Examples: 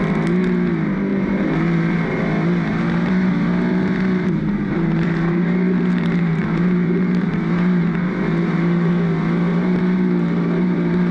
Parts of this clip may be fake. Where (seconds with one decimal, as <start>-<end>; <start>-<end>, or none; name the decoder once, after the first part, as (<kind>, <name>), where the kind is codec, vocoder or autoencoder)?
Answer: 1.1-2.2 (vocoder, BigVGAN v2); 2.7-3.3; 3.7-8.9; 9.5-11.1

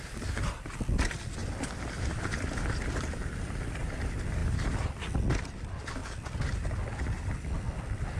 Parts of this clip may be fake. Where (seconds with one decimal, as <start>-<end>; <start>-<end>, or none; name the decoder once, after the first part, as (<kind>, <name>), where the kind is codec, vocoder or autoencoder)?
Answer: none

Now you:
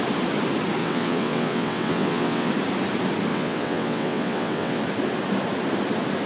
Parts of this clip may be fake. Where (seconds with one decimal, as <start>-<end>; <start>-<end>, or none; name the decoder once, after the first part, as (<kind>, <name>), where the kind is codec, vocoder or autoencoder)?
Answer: 0.8-2.5 (vocoder, WaveNeXt); 3.3-4.8

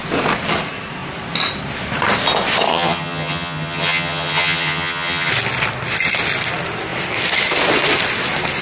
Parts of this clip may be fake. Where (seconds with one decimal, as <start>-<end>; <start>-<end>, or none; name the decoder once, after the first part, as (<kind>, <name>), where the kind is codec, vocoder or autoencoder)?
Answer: 2.7-5.3 (vocoder, HiFi-GAN)

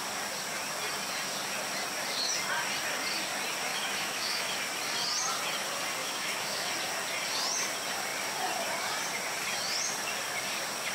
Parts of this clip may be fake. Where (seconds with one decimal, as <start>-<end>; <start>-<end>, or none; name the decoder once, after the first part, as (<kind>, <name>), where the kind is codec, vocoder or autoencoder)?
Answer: 3.7-4.5 (autoencoder, DAC-VAE); 6.0-6.7

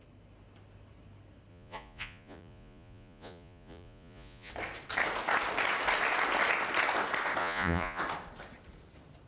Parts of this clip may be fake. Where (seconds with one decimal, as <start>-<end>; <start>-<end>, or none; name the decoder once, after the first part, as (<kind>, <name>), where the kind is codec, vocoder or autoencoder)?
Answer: 1.5-4.5 (vocoder, Vocos); 7.4-8.0

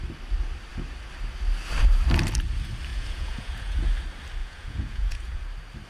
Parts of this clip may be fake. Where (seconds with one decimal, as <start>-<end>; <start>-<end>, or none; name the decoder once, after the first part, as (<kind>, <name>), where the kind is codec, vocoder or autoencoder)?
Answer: 2.9-3.9 (vocoder, Vocos); 4.4-5.4